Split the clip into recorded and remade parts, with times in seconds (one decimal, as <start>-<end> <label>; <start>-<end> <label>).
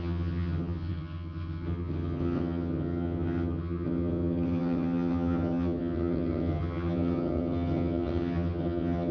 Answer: 0.0-9.1 remade